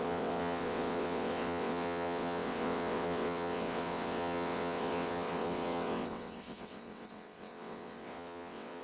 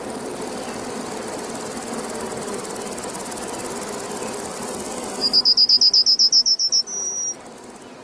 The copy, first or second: first